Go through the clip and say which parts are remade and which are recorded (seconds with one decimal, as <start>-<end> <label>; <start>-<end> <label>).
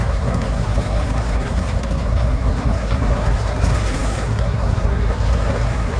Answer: 0.0-6.0 remade